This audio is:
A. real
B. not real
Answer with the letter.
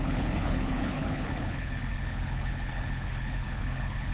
B